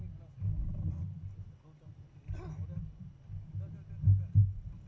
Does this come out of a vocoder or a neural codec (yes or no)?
no